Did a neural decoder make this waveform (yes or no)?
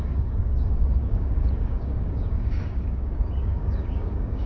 yes